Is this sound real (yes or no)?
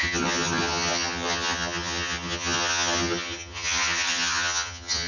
no